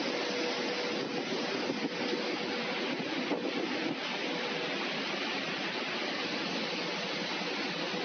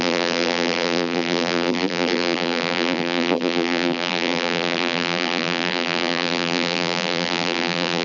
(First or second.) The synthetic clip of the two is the second